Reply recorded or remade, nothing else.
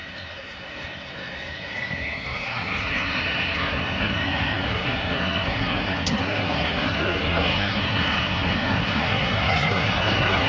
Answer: remade